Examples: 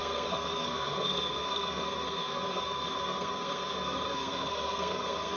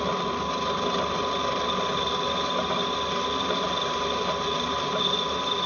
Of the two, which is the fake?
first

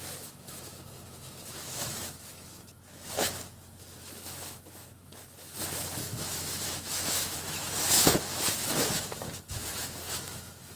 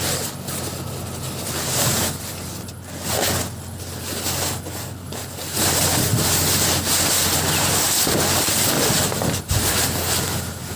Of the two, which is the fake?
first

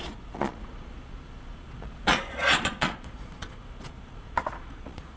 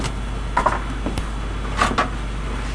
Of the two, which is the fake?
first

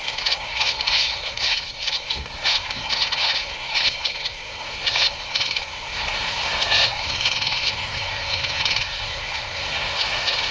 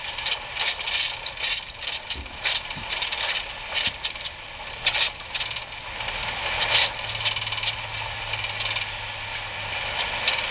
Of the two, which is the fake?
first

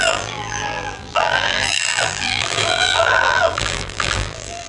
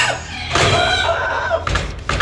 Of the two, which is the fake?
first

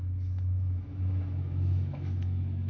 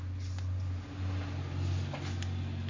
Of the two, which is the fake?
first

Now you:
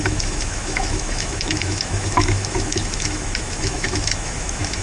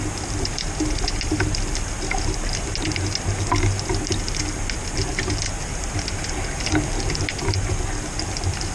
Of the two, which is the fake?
first